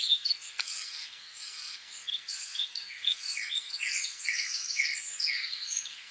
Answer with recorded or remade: remade